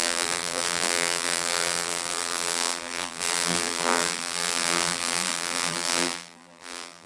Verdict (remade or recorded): remade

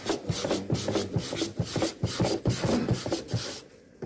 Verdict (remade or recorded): recorded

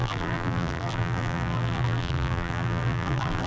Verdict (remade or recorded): remade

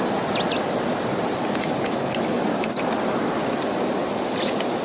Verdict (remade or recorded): recorded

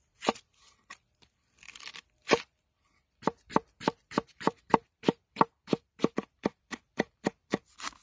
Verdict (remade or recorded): remade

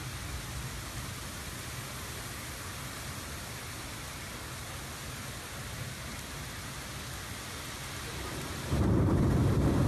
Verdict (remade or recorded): recorded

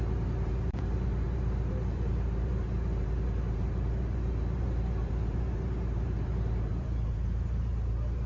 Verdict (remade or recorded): remade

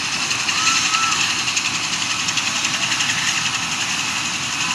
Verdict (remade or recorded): recorded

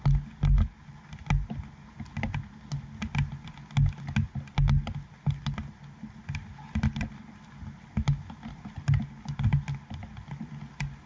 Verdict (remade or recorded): recorded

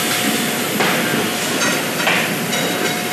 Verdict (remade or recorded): recorded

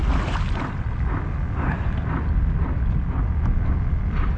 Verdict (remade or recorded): recorded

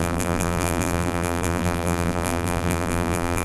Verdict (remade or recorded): remade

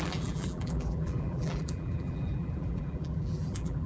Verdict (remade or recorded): remade